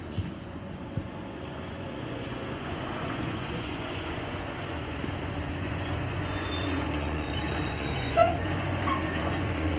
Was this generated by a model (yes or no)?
yes